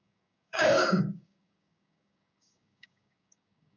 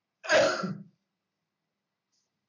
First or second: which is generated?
first